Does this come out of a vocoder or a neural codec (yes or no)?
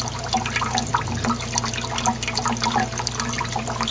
no